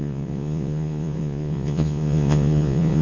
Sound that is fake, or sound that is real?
fake